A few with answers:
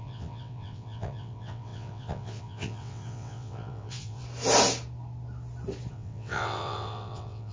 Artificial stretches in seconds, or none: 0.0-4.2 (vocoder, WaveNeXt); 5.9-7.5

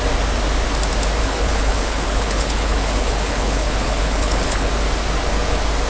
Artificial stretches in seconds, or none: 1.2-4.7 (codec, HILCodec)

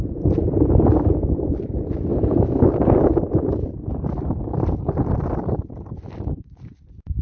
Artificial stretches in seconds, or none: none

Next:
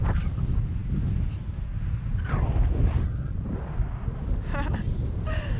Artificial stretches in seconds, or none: none

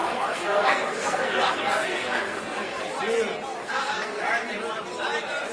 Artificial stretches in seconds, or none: 0.0-2.8 (codec, SNAC); 3.6-4.2